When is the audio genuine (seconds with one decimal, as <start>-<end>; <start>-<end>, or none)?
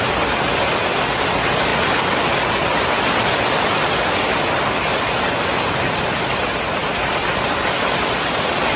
0.0-8.8